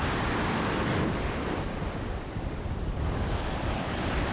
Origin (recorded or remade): recorded